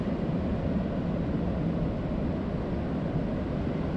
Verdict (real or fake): real